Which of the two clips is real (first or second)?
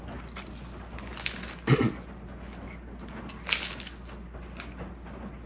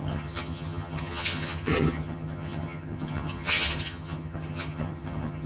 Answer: first